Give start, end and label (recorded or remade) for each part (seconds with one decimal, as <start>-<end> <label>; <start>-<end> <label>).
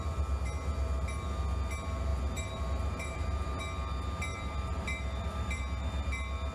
0.0-2.1 recorded; 2.1-3.6 remade; 3.6-4.3 recorded; 4.3-5.6 remade; 5.6-6.5 recorded